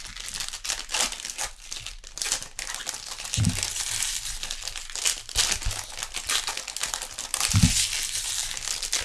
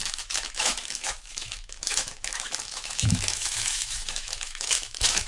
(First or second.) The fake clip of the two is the second